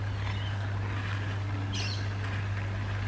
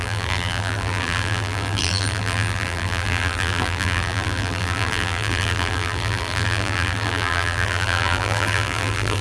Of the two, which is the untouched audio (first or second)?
first